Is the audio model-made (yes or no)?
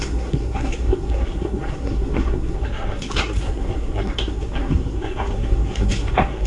yes